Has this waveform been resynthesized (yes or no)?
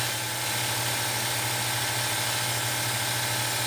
no